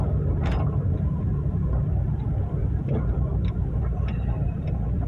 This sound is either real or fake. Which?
fake